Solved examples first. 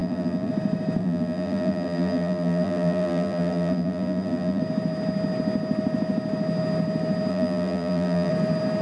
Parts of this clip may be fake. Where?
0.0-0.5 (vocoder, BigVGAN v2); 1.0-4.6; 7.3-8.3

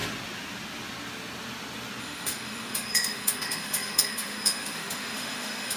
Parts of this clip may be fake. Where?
2.0-5.8 (autoencoder, DAC-VAE)

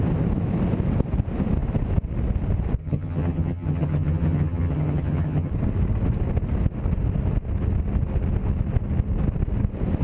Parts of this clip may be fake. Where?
2.8-5.5 (vocoder, HiFi-GAN)

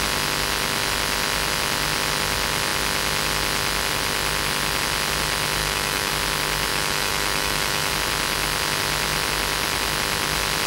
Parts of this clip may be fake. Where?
5.6-6.1 (autoencoder, DAC-VAE); 6.7-7.9

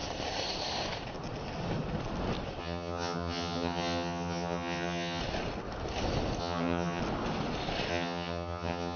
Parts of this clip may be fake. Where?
2.6-5.2 (vocoder, HiFi-GAN); 6.4-7.0; 7.9-9.0

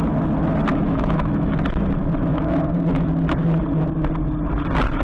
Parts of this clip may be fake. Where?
0.7-1.6 (autoencoder, DAC-VAE); 2.3-3.1

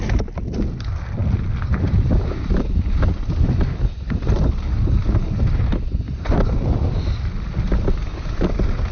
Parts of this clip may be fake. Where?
none

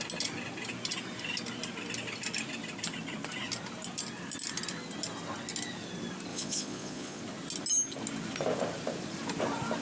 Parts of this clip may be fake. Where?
6.3-7.2 (vocoder, Vocos)